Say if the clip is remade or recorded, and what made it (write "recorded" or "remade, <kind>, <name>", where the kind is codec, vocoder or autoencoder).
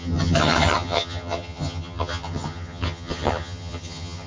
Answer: remade, vocoder, HiFi-GAN